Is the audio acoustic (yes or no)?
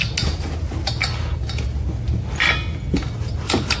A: yes